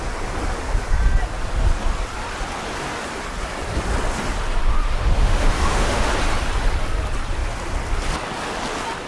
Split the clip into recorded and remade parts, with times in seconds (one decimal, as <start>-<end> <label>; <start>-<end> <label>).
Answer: 0.0-4.7 recorded; 4.7-6.1 remade; 6.1-9.1 recorded